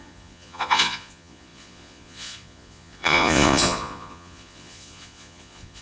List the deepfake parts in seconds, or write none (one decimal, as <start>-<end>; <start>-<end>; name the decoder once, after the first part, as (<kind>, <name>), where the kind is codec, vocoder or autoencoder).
0.0-5.8 (vocoder, Vocos)